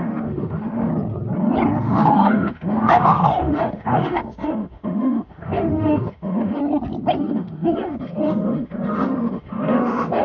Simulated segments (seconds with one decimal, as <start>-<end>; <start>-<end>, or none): 0.0-0.9; 1.8-6.6; 7.2-10.2